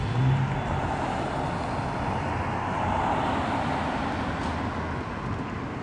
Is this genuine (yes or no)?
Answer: yes